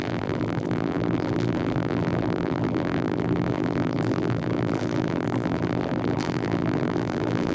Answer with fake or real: fake